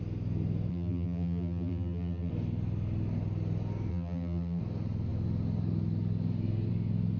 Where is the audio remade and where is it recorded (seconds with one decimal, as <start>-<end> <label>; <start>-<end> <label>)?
0.0-0.7 recorded; 0.7-2.3 remade; 2.3-3.9 recorded; 3.9-4.6 remade; 4.6-7.2 recorded